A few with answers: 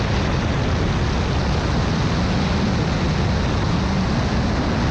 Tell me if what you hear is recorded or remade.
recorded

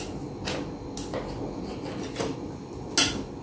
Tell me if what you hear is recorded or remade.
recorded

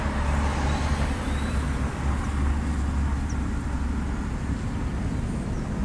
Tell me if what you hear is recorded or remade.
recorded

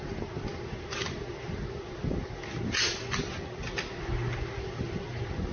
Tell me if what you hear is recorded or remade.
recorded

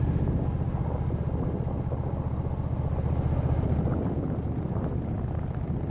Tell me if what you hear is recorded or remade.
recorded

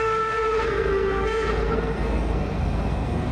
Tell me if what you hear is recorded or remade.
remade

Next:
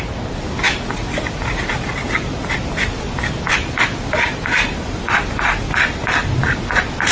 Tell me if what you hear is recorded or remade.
recorded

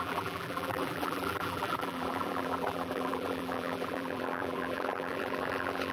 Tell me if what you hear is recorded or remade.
remade